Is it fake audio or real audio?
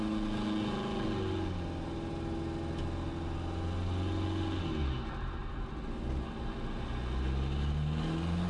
real